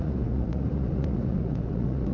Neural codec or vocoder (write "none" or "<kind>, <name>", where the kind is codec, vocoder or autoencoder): vocoder, Vocos